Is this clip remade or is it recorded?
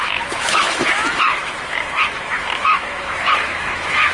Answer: remade